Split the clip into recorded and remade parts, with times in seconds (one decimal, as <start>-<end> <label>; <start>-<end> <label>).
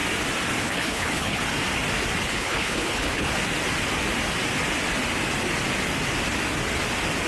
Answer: 0.0-0.6 recorded; 0.6-1.4 remade; 1.4-2.3 recorded; 2.3-3.3 remade; 3.3-7.3 recorded